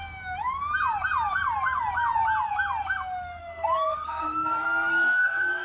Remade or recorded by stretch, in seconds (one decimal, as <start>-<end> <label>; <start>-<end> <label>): 0.0-3.4 recorded; 3.4-5.6 remade